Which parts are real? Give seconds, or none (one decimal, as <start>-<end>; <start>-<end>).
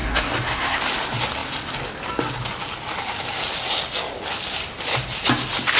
0.8-5.8